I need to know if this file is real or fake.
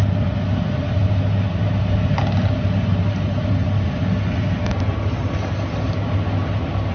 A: real